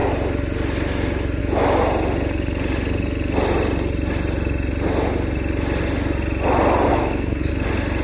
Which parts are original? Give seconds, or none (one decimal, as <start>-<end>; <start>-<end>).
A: 0.0-6.9; 7.5-8.0